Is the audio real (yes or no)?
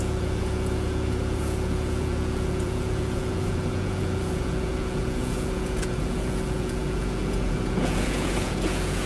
no